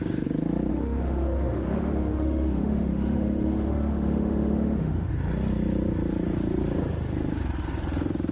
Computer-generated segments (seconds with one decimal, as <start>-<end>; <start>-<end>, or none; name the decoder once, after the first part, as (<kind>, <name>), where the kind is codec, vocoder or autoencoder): 0.7-5.1 (autoencoder, DAC-VAE)